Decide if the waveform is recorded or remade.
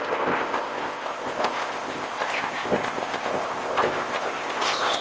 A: remade